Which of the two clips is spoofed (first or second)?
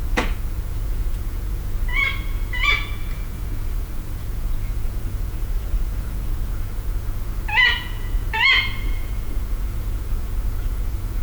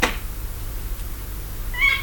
first